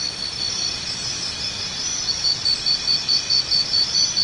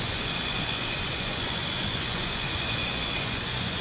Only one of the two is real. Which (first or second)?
first